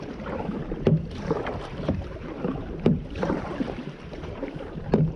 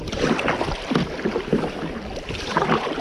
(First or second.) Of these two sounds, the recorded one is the second